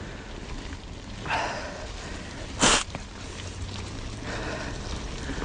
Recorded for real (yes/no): yes